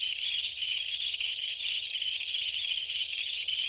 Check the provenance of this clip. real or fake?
fake